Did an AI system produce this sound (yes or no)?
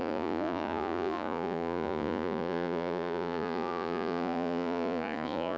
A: yes